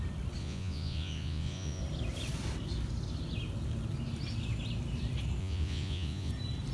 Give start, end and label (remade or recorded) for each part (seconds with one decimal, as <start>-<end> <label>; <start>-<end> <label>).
0.0-0.4 recorded; 0.4-1.8 remade; 1.8-5.4 recorded; 5.4-6.3 remade; 6.3-6.7 recorded